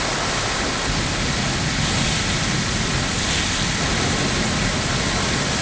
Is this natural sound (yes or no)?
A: yes